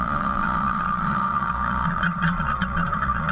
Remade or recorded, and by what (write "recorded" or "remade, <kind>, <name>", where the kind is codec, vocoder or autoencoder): remade, vocoder, Vocos